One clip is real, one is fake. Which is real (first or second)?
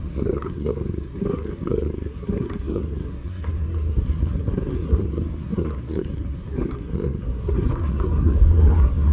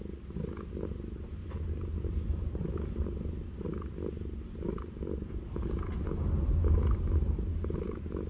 second